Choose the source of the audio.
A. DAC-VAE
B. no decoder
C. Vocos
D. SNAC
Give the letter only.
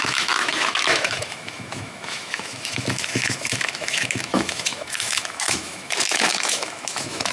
A